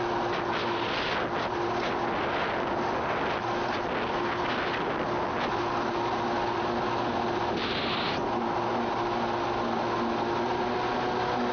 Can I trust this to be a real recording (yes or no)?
yes